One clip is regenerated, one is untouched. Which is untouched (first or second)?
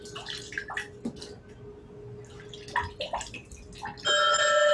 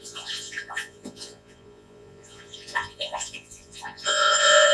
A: first